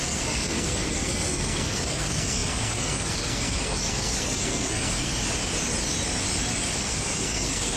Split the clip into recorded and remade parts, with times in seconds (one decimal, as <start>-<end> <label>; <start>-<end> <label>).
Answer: 0.0-5.1 remade; 5.1-6.8 recorded; 6.8-7.8 remade